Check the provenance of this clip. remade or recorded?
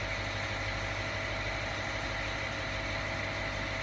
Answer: recorded